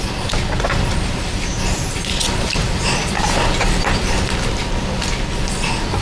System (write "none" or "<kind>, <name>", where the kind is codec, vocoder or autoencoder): none